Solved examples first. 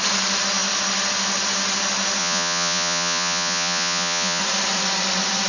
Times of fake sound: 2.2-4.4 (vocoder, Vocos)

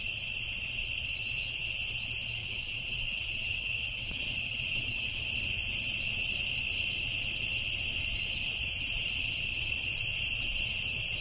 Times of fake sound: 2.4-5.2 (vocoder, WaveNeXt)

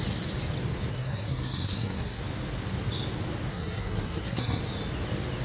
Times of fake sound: 0.9-2.2 (codec, SNAC); 3.5-4.6